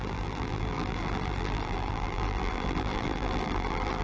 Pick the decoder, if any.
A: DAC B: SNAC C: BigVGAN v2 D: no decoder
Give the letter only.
C